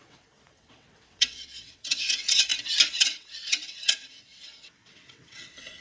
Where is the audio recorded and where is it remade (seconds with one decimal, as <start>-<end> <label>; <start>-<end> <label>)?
0.0-2.5 remade; 2.5-3.0 recorded; 3.0-5.8 remade